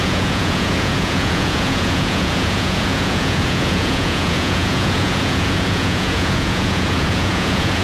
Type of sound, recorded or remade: remade